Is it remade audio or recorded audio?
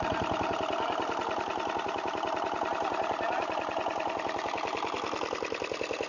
recorded